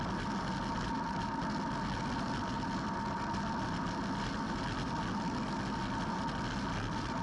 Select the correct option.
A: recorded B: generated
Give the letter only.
A